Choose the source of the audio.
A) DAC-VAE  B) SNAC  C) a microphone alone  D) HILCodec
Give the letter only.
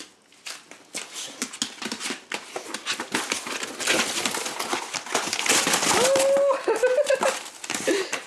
C